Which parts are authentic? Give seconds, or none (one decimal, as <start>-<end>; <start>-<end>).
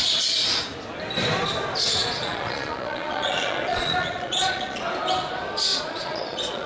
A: 0.5-2.0; 4.8-5.7